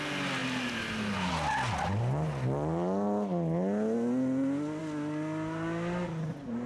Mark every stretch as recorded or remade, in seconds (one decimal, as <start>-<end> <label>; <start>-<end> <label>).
0.0-6.7 recorded